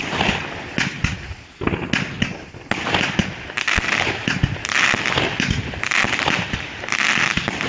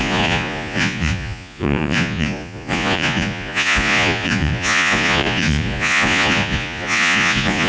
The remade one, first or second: second